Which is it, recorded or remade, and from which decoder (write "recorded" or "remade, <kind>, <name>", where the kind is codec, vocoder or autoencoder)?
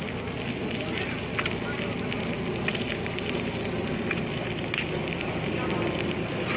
recorded